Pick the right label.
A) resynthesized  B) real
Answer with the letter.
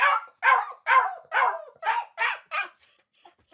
B